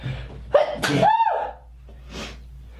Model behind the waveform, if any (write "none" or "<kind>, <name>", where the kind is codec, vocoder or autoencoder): none